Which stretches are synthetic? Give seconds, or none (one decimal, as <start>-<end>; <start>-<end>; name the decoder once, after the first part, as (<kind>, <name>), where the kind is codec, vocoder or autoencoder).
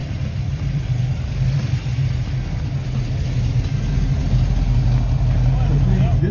0.0-1.1 (vocoder, BigVGAN v2)